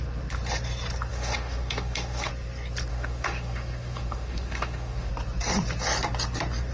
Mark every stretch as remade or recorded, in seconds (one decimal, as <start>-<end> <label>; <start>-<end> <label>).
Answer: 0.0-1.1 recorded; 1.1-2.3 remade; 2.3-2.9 recorded; 2.9-5.1 remade; 5.1-6.7 recorded